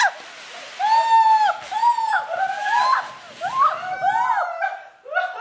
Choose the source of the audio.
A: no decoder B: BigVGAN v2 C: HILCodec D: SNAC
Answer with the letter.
A